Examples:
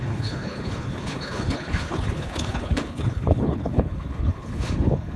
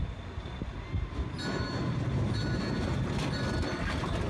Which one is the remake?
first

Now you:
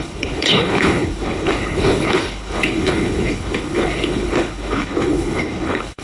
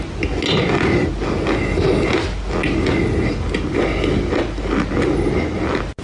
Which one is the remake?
first